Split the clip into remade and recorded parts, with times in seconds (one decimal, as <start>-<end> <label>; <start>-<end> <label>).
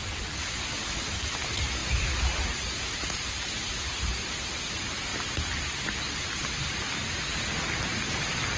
0.0-0.5 remade; 0.5-5.1 recorded; 5.1-7.2 remade; 7.2-8.6 recorded